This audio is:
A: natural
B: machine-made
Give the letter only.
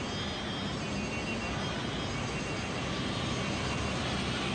A